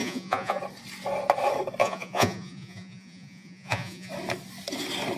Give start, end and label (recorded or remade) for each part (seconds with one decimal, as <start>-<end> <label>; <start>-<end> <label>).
0.0-0.6 remade; 0.6-1.8 recorded; 1.8-4.1 remade; 4.1-5.2 recorded